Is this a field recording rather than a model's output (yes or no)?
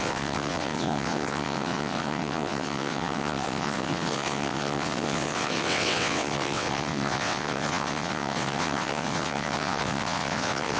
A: no